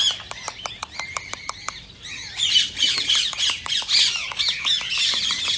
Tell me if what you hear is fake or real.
real